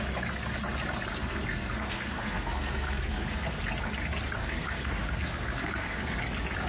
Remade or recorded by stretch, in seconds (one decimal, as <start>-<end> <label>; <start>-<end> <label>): 0.0-1.2 recorded; 1.2-3.6 remade; 3.6-4.4 recorded; 4.4-6.2 remade; 6.2-6.7 recorded